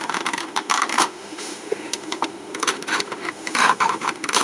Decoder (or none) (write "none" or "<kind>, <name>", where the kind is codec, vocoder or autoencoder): autoencoder, DAC-VAE